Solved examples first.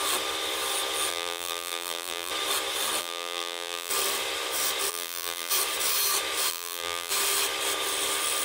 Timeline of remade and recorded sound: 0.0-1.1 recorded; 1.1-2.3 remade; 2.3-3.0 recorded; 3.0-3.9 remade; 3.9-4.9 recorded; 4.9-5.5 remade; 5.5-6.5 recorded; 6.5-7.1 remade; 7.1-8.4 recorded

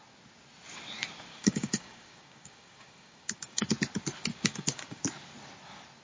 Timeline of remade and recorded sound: 0.0-1.3 recorded; 1.3-3.7 remade; 3.7-4.3 recorded; 4.3-5.0 remade; 5.0-6.0 recorded

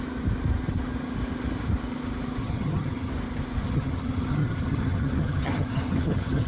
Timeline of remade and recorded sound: 0.0-2.4 recorded; 2.4-3.1 remade; 3.1-3.6 recorded; 3.6-6.5 remade

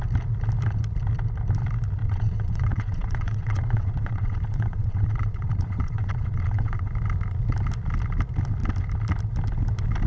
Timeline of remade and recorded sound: 0.0-2.0 recorded; 2.0-6.9 remade; 6.9-10.1 recorded

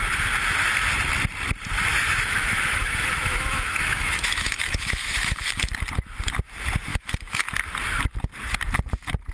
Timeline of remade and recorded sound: 0.0-1.9 recorded; 1.9-5.7 remade; 5.7-6.9 recorded; 6.9-7.5 remade; 7.5-9.3 recorded

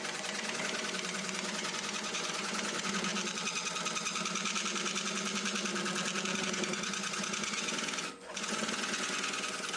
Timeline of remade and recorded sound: 0.0-3.1 remade; 3.1-6.4 recorded; 6.4-9.8 remade

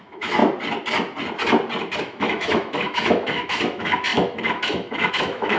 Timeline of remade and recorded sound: 0.0-0.4 remade; 0.4-2.0 recorded; 2.0-5.6 remade

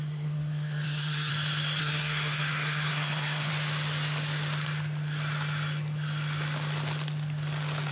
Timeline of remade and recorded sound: 0.0-1.3 remade; 1.3-1.8 recorded; 1.8-3.5 remade; 3.5-7.9 recorded